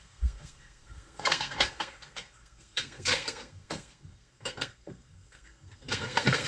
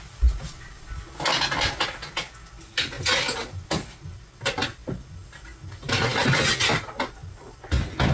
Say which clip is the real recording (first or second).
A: second